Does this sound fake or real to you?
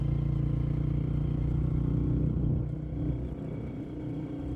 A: real